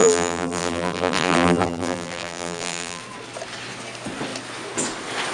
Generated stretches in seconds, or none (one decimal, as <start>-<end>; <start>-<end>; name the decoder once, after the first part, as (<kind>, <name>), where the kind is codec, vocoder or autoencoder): 0.0-3.0 (vocoder, BigVGAN v2)